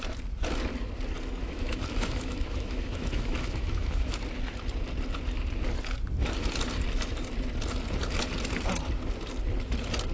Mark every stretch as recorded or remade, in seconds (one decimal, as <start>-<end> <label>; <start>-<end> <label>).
0.0-1.4 recorded; 1.4-4.2 remade; 4.2-10.1 recorded